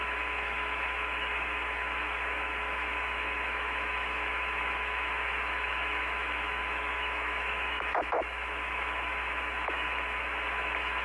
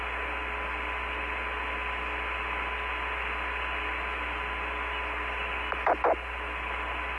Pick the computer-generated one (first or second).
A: first